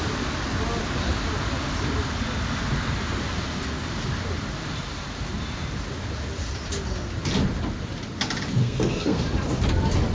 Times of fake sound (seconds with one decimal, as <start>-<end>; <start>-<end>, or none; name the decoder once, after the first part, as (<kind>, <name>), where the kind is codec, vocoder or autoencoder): 8.6-9.2 (codec, SNAC)